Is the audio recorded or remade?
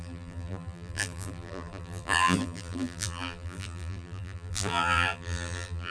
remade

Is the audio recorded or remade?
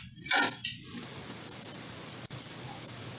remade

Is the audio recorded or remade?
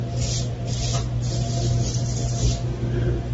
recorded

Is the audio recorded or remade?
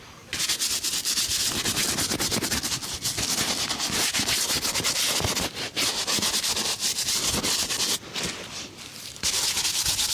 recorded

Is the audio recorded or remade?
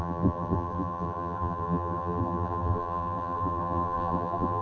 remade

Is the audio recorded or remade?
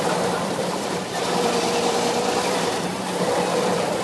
remade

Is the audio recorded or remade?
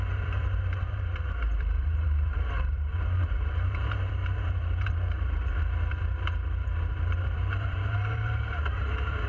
remade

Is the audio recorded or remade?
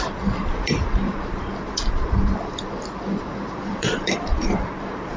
remade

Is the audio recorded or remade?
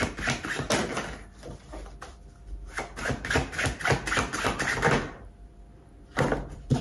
recorded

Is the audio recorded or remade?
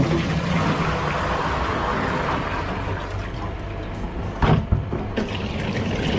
recorded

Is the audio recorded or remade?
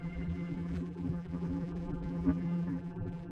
remade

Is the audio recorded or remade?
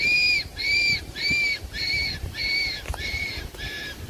remade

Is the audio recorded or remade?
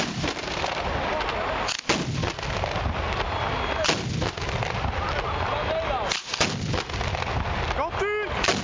recorded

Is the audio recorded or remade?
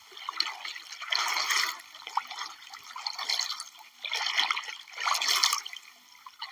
recorded